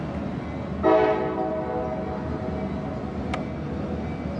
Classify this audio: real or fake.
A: real